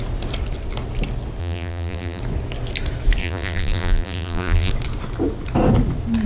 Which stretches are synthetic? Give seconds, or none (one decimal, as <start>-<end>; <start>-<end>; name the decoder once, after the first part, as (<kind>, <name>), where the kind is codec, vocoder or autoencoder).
1.4-2.2 (vocoder, BigVGAN v2); 3.2-4.7